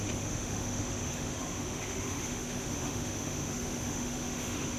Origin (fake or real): fake